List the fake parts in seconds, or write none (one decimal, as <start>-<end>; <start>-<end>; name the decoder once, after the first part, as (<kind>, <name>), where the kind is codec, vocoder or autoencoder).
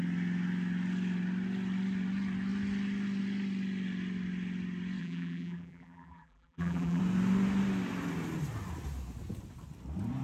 5.0-7.0 (vocoder, BigVGAN v2)